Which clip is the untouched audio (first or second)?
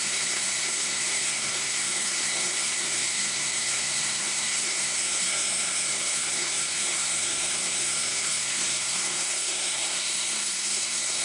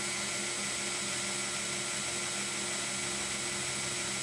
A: second